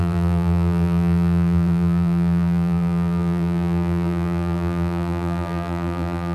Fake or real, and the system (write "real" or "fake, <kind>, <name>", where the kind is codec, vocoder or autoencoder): fake, vocoder, BigVGAN v2